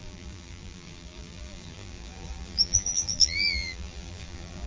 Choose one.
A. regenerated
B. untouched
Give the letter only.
A